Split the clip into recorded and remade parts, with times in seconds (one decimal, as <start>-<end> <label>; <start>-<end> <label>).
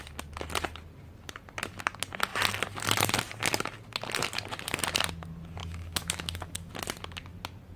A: 0.0-5.6 recorded; 5.6-6.7 remade; 6.7-7.8 recorded